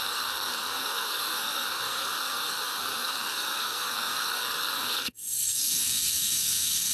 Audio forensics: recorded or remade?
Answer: remade